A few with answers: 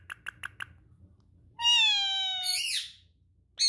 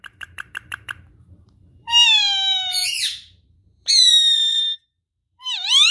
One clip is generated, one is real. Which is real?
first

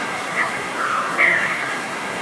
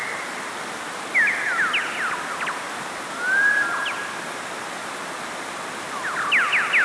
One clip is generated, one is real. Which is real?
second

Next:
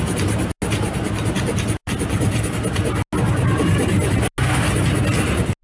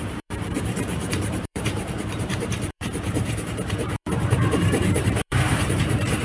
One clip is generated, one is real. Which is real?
first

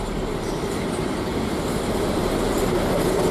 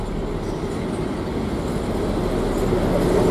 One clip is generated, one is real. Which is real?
second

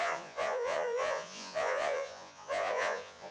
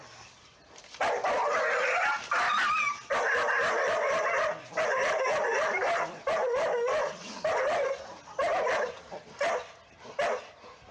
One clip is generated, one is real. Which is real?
second